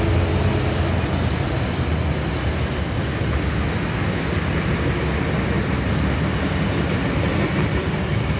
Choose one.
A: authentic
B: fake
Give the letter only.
A